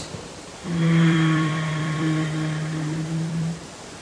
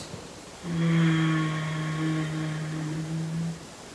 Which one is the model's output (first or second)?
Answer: first